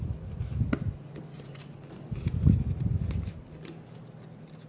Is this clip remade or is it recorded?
recorded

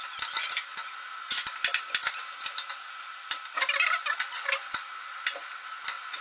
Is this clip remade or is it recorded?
recorded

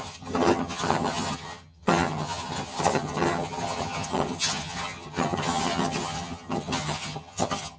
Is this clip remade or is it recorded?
remade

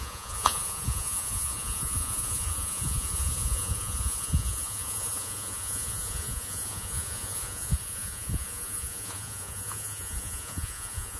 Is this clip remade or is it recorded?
remade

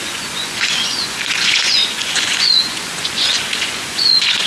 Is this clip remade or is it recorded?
remade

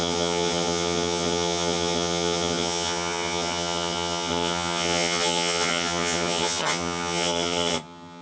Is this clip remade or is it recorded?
remade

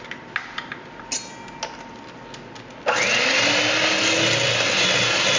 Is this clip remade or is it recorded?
recorded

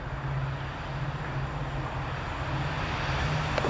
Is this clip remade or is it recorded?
recorded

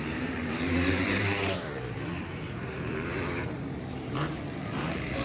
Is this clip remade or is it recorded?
remade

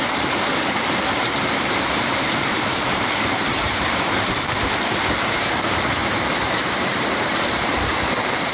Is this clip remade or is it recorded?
remade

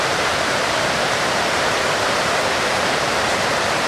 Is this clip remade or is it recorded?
remade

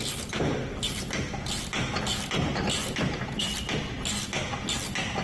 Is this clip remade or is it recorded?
recorded